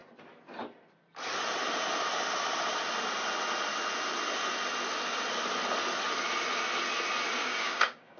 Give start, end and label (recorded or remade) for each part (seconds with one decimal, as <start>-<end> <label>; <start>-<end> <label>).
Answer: 0.0-7.4 recorded; 7.4-8.2 remade